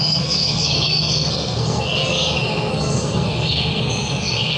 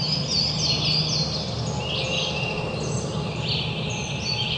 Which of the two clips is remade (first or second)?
first